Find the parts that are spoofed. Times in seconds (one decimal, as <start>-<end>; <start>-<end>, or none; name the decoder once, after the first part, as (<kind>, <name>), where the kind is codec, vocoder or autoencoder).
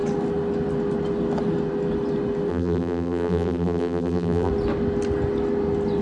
2.5-4.5 (vocoder, BigVGAN v2)